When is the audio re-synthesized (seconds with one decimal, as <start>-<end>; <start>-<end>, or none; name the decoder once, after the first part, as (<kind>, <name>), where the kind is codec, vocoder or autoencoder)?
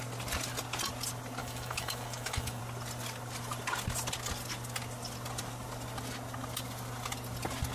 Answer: 1.4-2.6 (autoencoder, DAC-VAE)